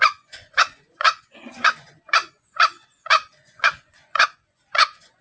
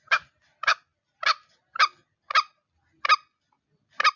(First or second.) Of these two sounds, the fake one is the first